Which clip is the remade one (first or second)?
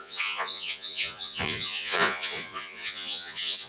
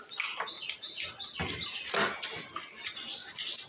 first